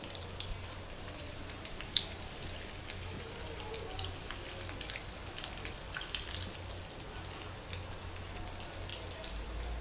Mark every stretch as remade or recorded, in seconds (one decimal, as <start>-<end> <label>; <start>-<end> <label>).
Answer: 0.0-0.5 recorded; 0.5-2.2 remade; 2.2-9.8 recorded